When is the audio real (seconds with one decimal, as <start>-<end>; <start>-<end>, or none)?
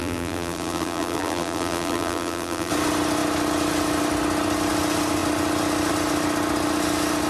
2.7-7.3